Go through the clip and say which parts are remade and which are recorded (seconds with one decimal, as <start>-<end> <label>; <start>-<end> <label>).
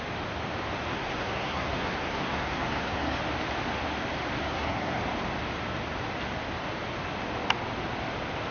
0.0-0.9 recorded; 0.9-3.2 remade; 3.2-4.4 recorded; 4.4-5.0 remade; 5.0-8.5 recorded